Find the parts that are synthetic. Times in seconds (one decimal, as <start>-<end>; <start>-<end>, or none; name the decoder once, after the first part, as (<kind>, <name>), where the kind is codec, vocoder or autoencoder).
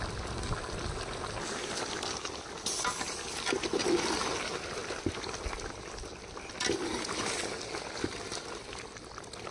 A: none